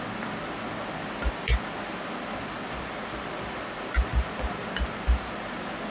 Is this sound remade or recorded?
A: recorded